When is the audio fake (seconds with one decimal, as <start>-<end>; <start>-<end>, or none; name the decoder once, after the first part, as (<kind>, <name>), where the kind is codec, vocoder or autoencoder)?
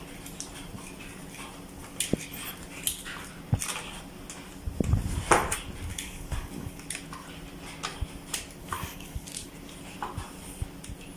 5.9-6.8 (codec, DAC); 8.6-9.5